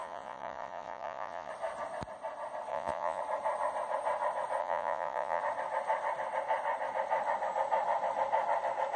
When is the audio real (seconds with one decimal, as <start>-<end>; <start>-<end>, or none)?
1.5-2.7; 3.2-4.6; 5.4-9.0